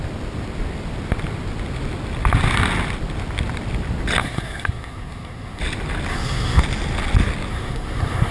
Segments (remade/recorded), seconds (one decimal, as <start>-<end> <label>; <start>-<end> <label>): 0.0-4.2 recorded; 4.2-5.6 remade; 5.6-6.1 recorded; 6.1-6.6 remade; 6.6-7.5 recorded; 7.5-8.3 remade